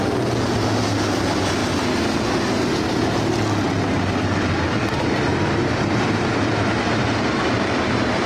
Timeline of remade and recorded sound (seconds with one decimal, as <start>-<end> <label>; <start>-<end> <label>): 0.0-5.7 recorded; 5.7-8.3 remade